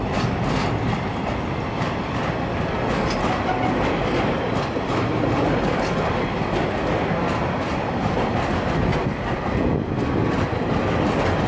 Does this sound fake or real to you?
real